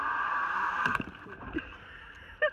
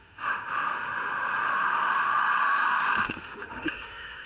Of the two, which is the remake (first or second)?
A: second